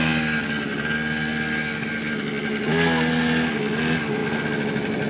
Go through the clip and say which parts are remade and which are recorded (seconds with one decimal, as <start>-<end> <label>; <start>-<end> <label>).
0.0-5.1 recorded